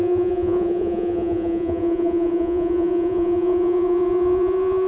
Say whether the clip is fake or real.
fake